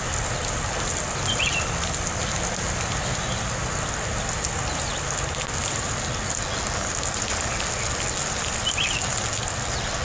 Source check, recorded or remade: recorded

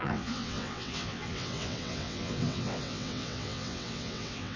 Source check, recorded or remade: remade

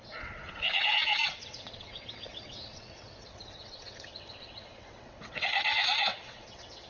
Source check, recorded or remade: remade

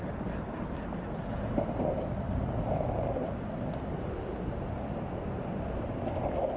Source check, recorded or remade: recorded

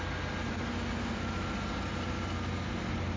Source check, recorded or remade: recorded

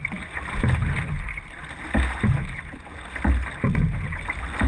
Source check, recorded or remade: recorded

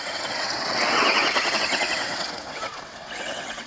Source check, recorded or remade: remade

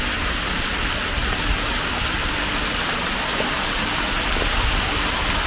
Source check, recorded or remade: recorded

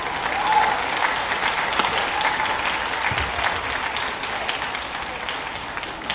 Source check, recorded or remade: recorded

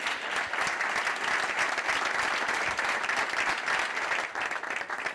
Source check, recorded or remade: recorded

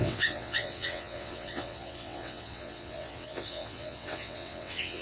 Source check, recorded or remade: remade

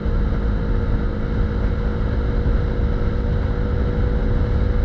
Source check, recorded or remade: recorded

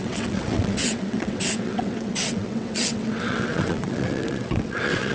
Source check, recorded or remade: remade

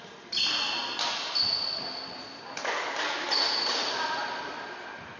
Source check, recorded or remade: recorded